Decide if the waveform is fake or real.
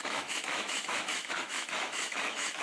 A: fake